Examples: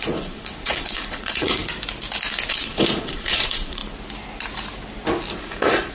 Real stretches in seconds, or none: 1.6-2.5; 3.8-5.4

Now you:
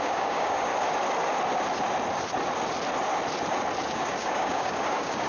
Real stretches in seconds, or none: 0.7-3.9

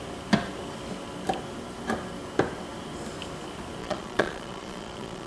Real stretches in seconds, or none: 0.0-3.8